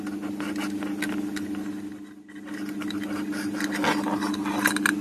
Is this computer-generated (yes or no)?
no